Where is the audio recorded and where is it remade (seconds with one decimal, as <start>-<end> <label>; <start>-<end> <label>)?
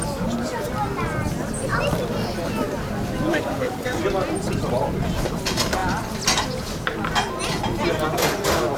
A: 0.0-3.3 recorded; 3.3-4.0 remade; 4.0-8.8 recorded